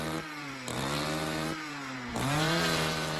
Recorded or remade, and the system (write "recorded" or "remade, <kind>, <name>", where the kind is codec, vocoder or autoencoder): remade, vocoder, BigVGAN v2